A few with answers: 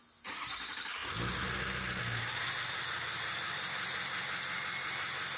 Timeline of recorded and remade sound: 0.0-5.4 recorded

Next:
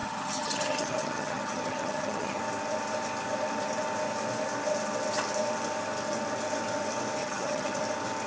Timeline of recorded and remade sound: 0.0-2.4 remade; 2.4-7.2 recorded; 7.2-7.8 remade; 7.8-8.3 recorded

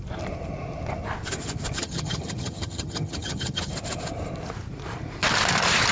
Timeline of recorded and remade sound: 0.0-1.8 recorded; 1.8-3.7 remade; 3.7-5.9 recorded

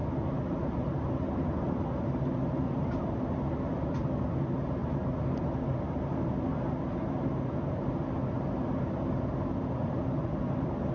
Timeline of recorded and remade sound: 0.0-10.9 recorded